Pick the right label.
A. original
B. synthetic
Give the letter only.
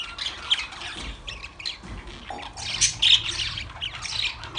A